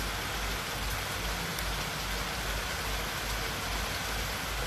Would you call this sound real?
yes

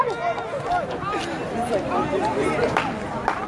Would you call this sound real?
yes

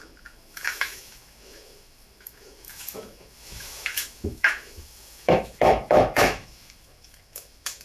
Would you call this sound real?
no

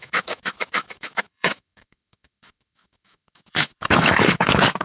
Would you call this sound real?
no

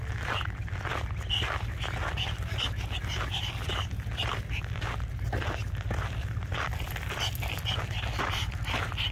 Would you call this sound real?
yes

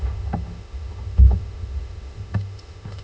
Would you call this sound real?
no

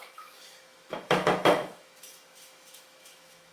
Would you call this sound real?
no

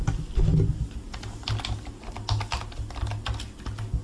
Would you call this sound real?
yes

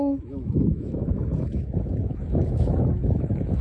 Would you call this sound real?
no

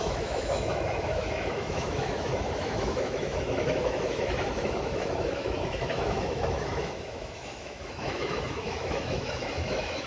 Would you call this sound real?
no